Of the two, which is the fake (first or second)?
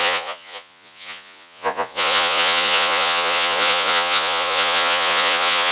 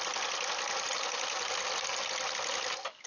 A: first